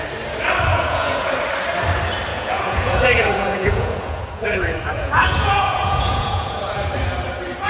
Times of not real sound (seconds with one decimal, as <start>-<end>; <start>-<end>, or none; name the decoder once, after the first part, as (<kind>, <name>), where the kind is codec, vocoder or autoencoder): 0.7-1.3 (vocoder, Vocos); 2.3-6.9